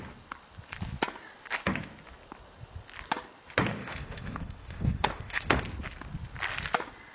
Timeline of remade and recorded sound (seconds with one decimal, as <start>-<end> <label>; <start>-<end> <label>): 0.0-3.8 recorded; 3.8-5.6 remade; 5.6-7.1 recorded